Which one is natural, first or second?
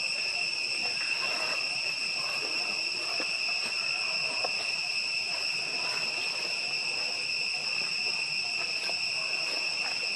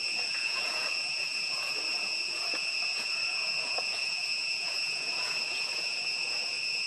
first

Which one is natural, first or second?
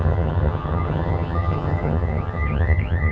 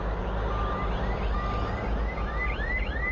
second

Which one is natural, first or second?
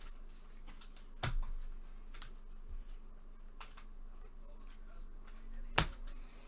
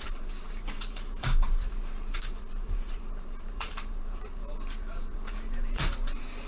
first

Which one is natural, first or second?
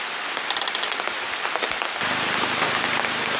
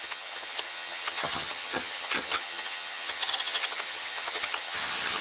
first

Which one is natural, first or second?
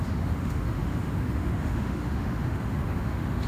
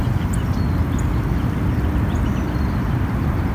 second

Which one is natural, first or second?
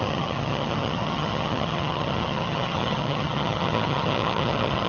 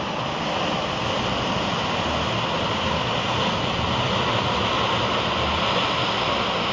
second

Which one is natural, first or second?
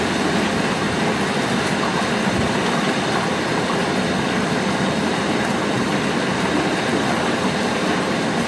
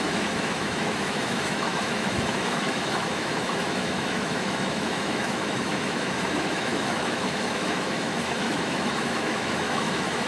first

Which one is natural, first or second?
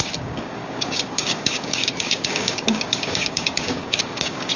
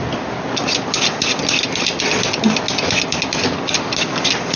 second